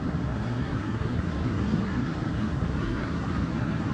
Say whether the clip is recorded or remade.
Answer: remade